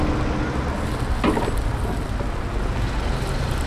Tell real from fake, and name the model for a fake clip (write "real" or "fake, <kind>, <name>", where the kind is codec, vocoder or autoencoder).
real